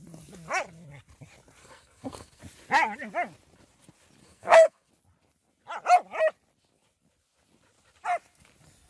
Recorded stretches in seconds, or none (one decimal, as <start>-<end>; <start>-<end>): 0.0-1.6; 2.4-4.2; 4.9-8.9